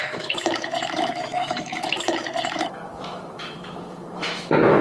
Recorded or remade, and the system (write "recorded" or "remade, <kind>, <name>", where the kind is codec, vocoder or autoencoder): remade, autoencoder, DAC-VAE